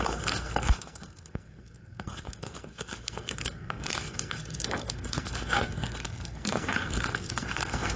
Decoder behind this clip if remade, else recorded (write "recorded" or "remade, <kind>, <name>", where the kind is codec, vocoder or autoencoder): remade, codec, SNAC